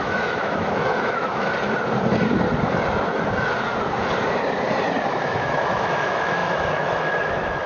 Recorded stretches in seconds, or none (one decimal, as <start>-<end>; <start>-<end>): 1.5-5.1